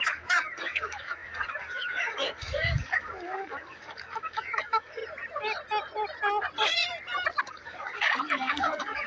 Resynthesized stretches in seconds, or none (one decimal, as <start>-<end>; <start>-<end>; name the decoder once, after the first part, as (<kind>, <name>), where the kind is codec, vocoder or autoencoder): 0.0-5.0 (codec, DAC); 7.4-9.1